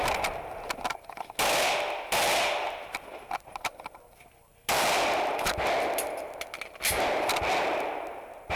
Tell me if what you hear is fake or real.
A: real